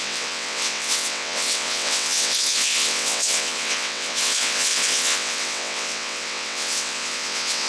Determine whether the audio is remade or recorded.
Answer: remade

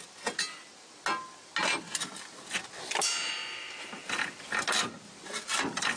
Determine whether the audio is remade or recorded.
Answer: recorded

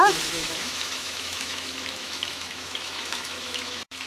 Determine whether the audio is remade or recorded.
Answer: remade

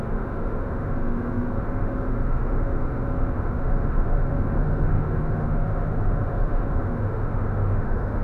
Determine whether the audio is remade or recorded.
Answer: remade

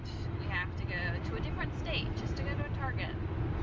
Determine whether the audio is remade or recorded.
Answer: recorded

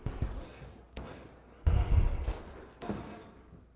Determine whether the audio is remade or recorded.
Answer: recorded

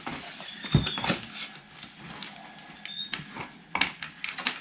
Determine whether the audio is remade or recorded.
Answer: recorded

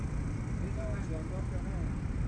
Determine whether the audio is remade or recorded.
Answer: recorded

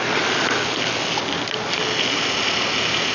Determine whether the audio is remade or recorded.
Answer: recorded